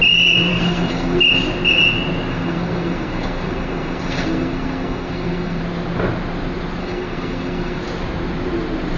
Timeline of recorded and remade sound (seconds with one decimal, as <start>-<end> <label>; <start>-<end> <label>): 0.0-0.5 recorded; 0.5-1.2 remade; 1.2-2.3 recorded; 2.3-5.6 remade; 5.6-6.8 recorded; 6.8-7.8 remade; 7.8-9.0 recorded